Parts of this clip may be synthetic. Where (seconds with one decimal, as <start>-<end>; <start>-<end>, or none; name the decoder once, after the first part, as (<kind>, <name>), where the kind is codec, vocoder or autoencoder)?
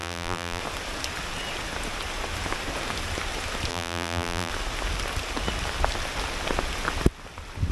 0.0-0.6 (vocoder, BigVGAN v2); 3.7-4.5